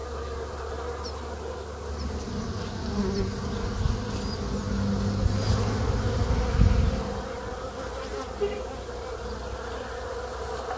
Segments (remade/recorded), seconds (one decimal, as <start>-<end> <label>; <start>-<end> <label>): 0.0-10.8 recorded